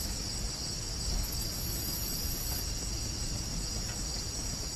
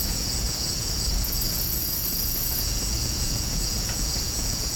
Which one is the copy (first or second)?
second